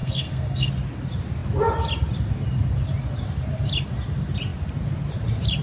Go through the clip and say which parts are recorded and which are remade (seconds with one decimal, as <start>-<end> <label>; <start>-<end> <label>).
0.0-0.7 remade; 0.7-5.6 recorded